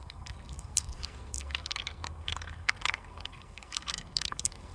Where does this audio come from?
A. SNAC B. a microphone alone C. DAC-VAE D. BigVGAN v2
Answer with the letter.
A